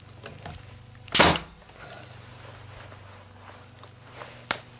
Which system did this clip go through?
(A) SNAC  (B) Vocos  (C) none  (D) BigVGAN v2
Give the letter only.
C